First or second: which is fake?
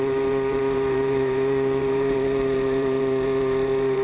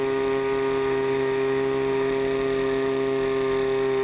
first